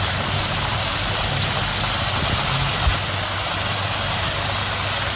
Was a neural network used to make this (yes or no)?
no